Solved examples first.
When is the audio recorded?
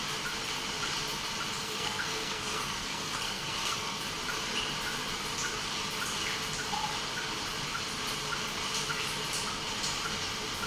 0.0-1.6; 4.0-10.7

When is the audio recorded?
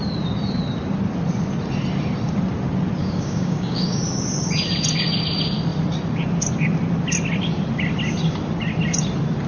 0.0-3.0; 4.0-9.5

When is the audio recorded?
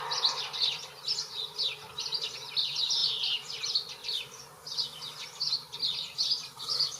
0.0-7.0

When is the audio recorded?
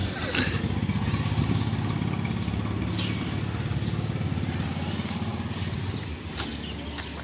0.0-7.2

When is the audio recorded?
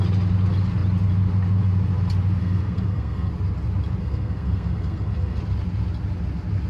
0.0-2.4; 3.3-4.0; 5.4-6.7